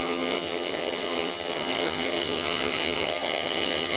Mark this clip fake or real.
fake